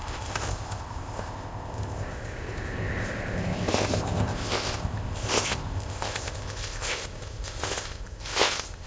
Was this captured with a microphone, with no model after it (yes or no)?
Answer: no